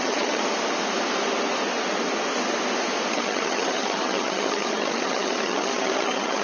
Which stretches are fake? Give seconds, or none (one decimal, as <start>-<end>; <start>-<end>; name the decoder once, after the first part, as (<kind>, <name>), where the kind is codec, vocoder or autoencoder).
0.0-0.4 (vocoder, HiFi-GAN); 3.1-6.4